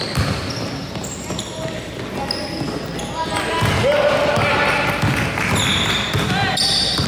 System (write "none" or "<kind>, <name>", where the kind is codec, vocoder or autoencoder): none